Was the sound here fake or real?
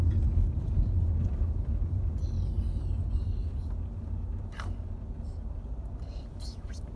real